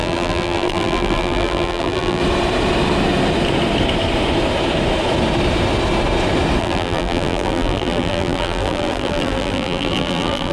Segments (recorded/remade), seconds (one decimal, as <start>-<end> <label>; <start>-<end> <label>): 0.0-2.2 remade; 2.2-6.6 recorded; 6.6-10.5 remade